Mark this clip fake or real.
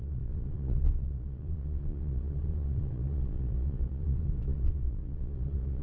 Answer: fake